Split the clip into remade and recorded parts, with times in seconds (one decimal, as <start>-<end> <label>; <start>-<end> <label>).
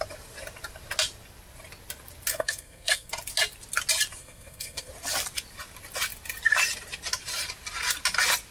0.0-2.3 recorded; 2.3-3.1 remade; 3.1-4.2 recorded; 4.2-4.9 remade; 4.9-8.5 recorded